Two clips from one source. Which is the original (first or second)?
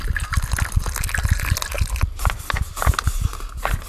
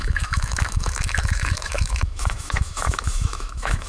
first